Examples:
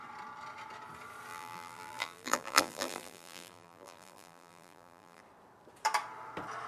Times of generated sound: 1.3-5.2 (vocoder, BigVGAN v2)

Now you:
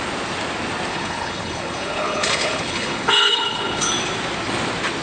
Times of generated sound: 0.9-3.9 (codec, HILCodec)

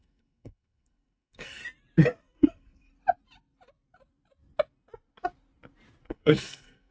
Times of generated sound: 0.0-1.6 (codec, SNAC); 2.2-2.9; 6.1-6.9

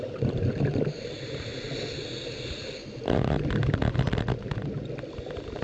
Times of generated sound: none